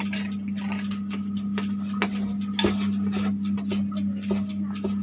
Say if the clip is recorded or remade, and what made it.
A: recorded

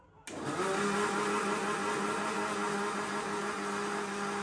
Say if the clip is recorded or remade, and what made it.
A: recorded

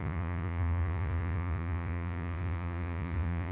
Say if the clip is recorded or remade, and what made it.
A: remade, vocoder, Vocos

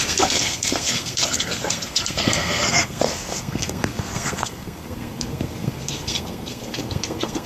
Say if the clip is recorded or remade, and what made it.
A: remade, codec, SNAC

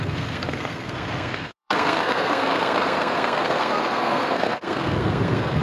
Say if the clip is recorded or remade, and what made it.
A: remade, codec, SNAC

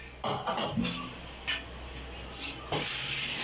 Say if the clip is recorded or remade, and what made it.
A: recorded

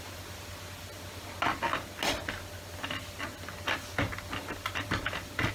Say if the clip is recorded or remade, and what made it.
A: recorded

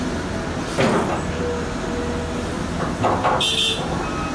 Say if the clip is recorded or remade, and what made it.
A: recorded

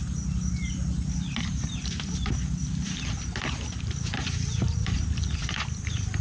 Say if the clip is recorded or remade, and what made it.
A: remade, vocoder, BigVGAN v2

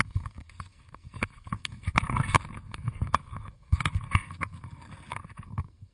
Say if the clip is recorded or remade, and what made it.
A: remade, codec, SNAC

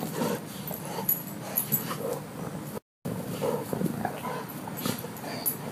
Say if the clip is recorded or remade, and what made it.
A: recorded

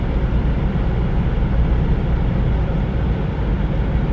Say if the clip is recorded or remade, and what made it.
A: recorded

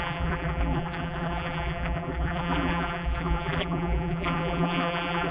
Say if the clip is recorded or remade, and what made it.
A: remade, vocoder, BigVGAN v2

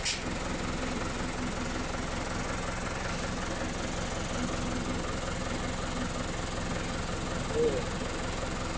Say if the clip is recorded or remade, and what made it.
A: recorded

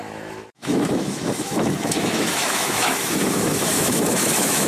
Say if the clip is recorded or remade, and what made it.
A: remade, autoencoder, DAC-VAE